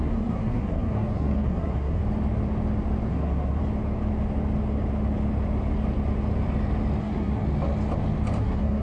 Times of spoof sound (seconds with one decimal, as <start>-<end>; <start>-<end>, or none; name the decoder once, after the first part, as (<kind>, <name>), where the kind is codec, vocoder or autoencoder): 0.0-2.0 (codec, SNAC); 3.1-3.6; 7.0-7.4; 8.4-8.8